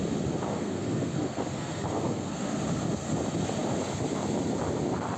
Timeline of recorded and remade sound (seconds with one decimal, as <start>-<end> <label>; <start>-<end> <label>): 0.0-0.5 recorded; 0.5-2.5 remade; 2.5-5.2 recorded